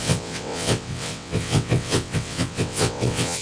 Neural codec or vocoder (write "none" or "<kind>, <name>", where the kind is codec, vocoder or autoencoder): vocoder, WaveNeXt